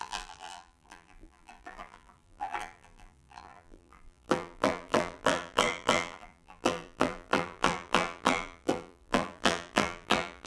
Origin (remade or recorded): remade